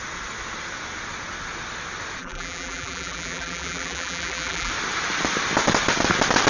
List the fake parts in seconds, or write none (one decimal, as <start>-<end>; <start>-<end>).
2.2-4.7